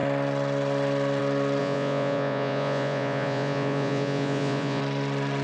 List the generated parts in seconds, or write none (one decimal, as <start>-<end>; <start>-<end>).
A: 1.6-4.8